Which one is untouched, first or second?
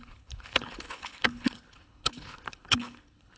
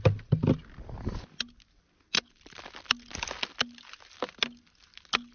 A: second